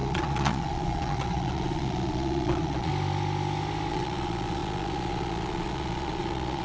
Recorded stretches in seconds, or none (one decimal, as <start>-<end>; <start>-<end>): 2.9-3.9